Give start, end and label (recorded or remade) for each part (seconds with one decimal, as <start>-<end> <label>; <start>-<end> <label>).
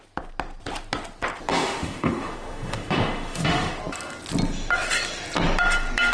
0.0-1.5 recorded; 1.5-3.8 remade; 3.8-6.1 recorded